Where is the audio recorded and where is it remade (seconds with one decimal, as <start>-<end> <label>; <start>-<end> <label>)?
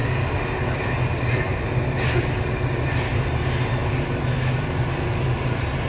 0.0-5.9 recorded